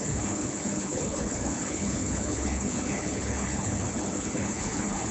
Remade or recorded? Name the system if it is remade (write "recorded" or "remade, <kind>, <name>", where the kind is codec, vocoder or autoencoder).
remade, codec, HILCodec